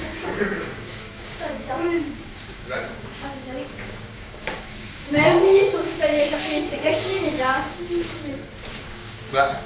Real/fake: fake